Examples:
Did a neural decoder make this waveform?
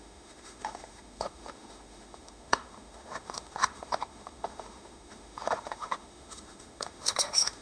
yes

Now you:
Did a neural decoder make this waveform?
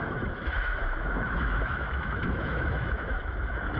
yes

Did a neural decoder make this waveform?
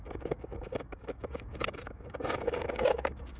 yes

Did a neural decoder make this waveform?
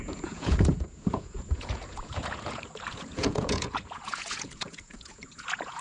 yes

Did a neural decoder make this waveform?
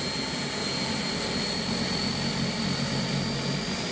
no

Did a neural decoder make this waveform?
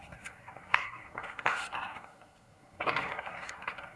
yes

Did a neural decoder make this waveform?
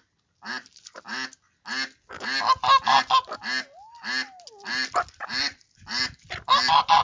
no